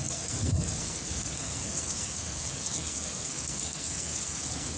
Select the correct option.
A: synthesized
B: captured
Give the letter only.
A